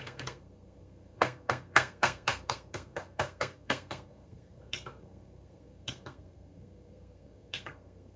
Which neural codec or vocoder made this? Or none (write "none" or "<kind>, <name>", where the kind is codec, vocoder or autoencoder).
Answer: codec, SNAC